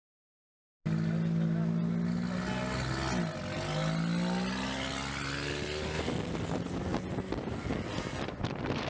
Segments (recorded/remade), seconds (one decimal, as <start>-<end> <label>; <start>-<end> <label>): 0.0-8.9 recorded